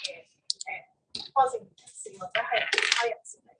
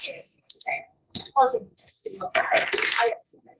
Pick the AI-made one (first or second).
second